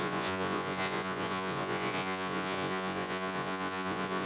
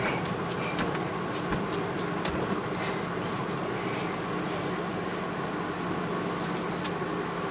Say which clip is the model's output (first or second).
first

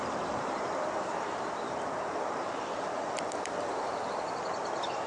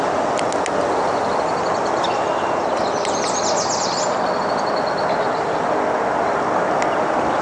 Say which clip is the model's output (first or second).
first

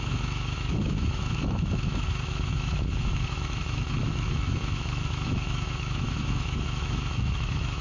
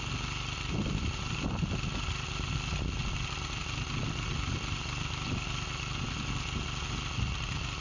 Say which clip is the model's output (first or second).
first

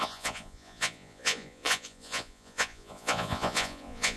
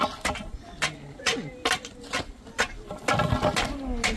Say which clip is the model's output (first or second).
first